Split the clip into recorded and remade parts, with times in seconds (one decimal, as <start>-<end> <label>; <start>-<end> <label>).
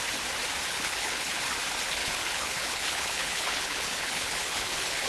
0.0-0.7 recorded; 0.7-1.4 remade; 1.4-2.0 recorded; 2.0-5.1 remade